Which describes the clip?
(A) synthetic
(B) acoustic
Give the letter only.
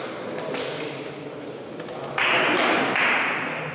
B